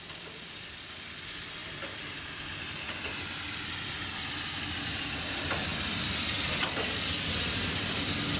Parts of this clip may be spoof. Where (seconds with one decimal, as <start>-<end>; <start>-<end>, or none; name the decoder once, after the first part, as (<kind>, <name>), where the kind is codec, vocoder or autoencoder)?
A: none